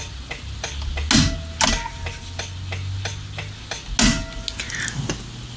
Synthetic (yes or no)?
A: no